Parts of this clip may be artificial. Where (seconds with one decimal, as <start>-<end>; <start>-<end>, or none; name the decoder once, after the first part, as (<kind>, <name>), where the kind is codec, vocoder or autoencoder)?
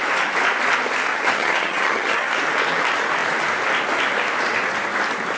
1.1-2.3 (vocoder, HiFi-GAN)